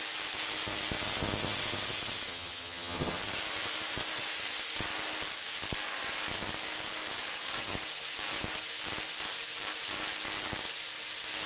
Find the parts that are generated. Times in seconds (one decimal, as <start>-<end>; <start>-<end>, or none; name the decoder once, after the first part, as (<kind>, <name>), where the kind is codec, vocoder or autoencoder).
2.3-3.2 (vocoder, HiFi-GAN)